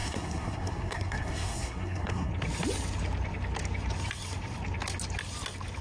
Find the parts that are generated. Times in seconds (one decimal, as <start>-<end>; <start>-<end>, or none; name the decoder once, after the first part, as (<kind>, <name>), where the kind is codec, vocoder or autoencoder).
0.0-2.3 (codec, SNAC)